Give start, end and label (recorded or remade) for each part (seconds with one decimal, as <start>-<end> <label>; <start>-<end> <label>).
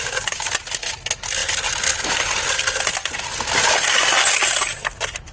0.0-5.3 recorded